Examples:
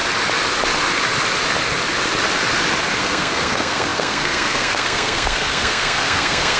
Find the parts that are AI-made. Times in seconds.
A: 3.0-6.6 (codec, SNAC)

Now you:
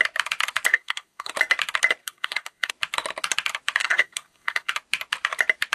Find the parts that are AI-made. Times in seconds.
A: 0.7-1.3 (codec, SNAC); 2.0-2.7; 3.8-4.7

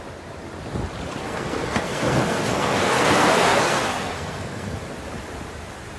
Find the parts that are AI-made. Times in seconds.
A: 1.2-4.8 (codec, SNAC)